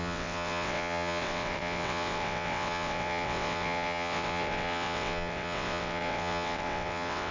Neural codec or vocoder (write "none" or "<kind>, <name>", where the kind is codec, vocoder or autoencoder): vocoder, WaveNeXt